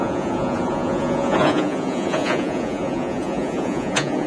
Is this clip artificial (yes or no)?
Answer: yes